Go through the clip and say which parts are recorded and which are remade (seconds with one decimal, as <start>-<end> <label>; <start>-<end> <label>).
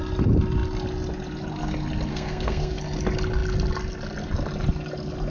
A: 0.0-2.1 recorded; 2.1-2.8 remade; 2.8-5.3 recorded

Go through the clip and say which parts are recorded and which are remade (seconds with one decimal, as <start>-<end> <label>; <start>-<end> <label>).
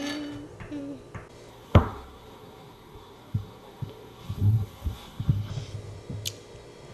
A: 0.0-1.5 recorded; 1.5-5.5 remade; 5.5-6.9 recorded